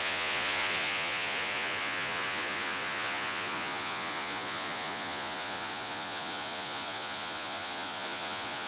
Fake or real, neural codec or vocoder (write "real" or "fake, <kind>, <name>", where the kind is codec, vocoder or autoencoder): fake, vocoder, Vocos